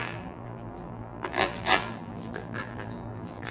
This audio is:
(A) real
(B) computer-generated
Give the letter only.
B